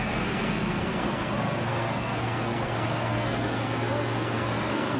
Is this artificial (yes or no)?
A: yes